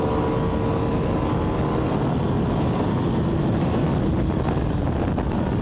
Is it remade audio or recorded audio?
recorded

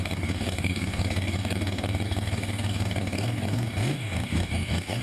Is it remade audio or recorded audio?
remade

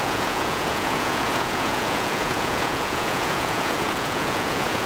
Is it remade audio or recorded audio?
remade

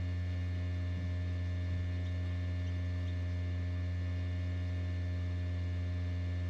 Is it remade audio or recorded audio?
recorded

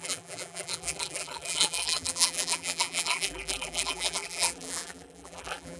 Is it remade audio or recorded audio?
remade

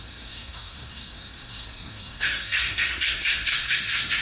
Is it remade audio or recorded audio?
remade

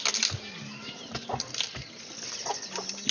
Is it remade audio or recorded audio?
recorded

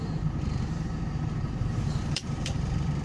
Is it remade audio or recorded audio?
remade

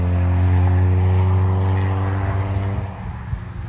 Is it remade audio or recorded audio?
recorded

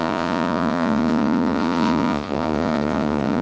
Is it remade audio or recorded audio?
remade